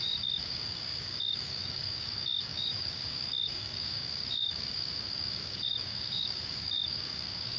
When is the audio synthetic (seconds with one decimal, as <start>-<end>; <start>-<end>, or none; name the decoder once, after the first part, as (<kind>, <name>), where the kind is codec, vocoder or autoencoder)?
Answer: 0.0-7.6 (codec, DAC)